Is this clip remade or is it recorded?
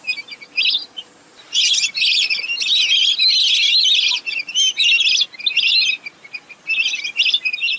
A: recorded